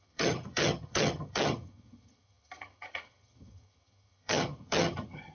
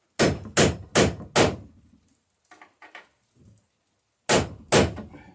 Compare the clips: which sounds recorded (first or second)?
second